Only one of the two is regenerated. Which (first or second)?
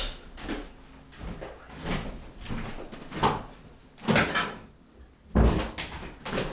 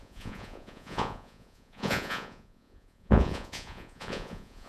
second